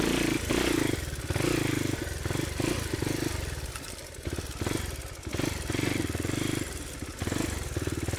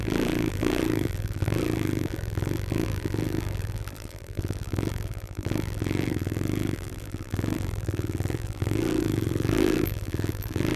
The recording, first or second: first